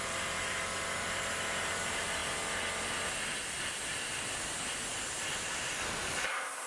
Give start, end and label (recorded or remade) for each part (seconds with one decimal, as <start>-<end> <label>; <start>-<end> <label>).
0.0-2.2 remade; 2.2-5.5 recorded; 5.5-6.7 remade